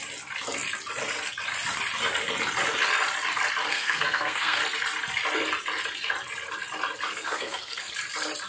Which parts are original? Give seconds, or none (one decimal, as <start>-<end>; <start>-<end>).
0.0-3.7; 4.6-7.1; 7.9-8.5